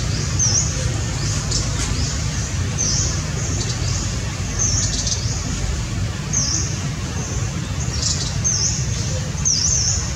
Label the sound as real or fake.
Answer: real